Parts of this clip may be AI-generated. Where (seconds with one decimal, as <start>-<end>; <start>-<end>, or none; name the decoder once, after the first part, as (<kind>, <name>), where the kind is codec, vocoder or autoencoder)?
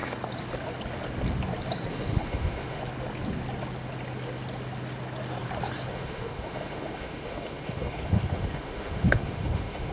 1.9-2.8 (autoencoder, DAC-VAE); 5.9-9.9